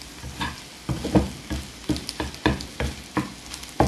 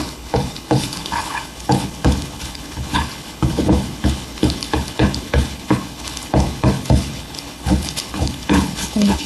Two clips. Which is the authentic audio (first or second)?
first